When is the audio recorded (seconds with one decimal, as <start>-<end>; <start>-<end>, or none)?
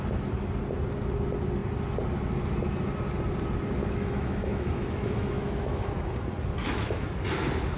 0.0-3.8; 5.9-6.6; 7.2-7.8